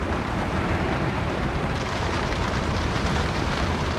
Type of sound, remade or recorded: remade